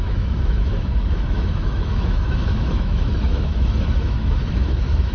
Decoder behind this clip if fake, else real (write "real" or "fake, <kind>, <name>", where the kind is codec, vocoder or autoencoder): fake, autoencoder, DAC-VAE